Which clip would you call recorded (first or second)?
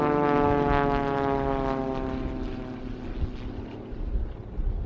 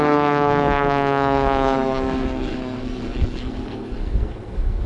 first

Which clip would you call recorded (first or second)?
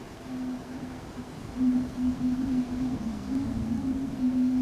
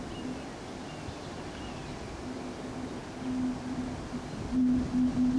second